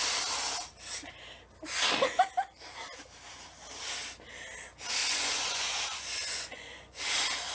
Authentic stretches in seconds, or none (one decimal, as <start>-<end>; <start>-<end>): 0.0-5.0; 7.0-7.5